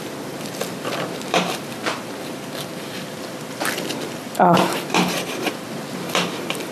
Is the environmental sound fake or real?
fake